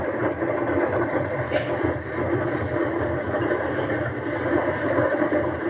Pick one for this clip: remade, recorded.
remade